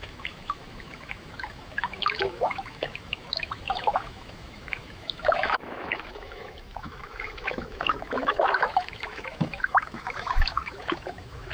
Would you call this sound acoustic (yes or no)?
no